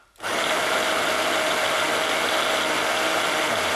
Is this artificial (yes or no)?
no